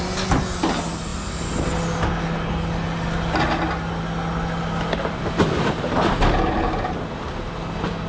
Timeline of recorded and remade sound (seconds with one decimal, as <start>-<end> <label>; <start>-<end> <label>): 0.0-8.1 recorded